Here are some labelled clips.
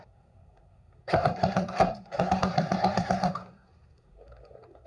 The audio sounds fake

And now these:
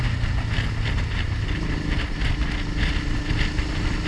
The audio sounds real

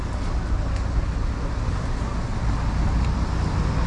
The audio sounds real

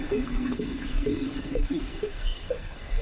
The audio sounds fake